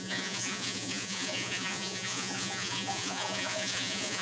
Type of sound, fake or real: fake